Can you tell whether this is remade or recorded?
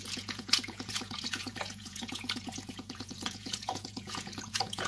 remade